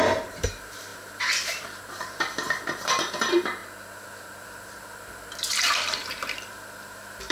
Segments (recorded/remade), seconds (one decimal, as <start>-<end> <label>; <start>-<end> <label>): 0.0-3.6 remade; 3.6-4.2 recorded; 4.2-7.3 remade